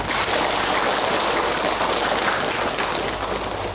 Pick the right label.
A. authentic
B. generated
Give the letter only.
A